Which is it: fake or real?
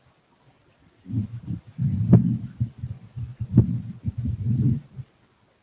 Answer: real